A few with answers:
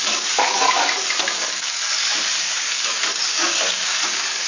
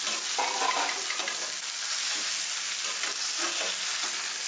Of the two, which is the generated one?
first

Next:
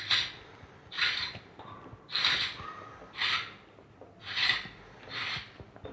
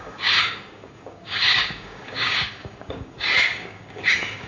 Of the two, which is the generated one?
second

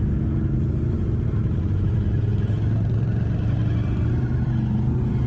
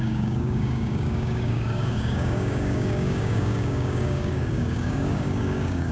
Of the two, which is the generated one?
second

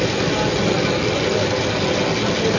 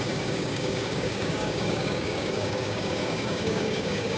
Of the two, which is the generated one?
second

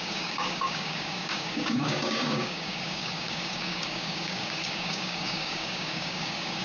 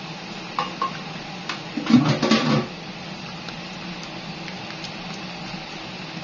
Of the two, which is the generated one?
first